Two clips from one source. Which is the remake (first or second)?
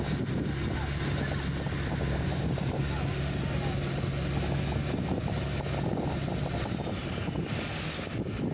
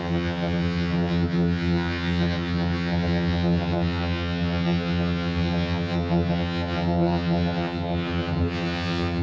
second